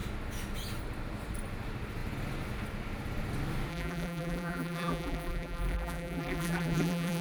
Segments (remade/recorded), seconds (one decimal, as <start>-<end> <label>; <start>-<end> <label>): 0.0-3.7 recorded; 3.7-7.2 remade